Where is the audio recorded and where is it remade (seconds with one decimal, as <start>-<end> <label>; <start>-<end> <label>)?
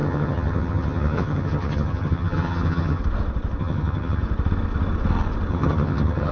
0.0-3.0 remade; 3.0-3.6 recorded; 3.6-4.2 remade; 4.2-5.5 recorded; 5.5-6.3 remade